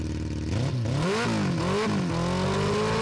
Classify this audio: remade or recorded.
recorded